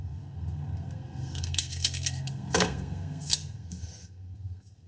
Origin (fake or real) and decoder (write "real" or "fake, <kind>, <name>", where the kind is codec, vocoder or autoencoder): fake, codec, SNAC